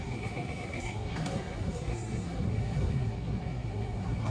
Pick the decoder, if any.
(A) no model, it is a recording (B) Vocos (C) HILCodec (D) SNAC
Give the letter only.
D